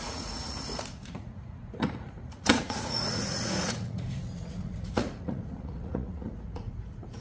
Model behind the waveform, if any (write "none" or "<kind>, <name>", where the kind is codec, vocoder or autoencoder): vocoder, Vocos